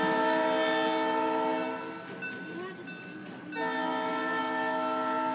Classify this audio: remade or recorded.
recorded